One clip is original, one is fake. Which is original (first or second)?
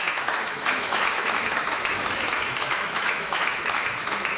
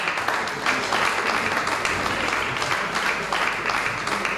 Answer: second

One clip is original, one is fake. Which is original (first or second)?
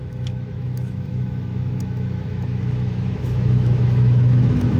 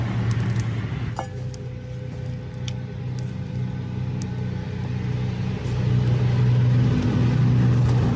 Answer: second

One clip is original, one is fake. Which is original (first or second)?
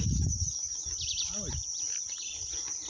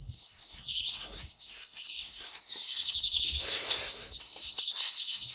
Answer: first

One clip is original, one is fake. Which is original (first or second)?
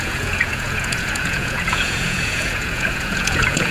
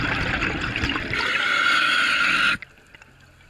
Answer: second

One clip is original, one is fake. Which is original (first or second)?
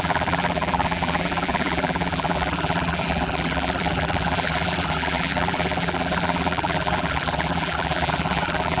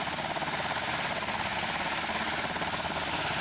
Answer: second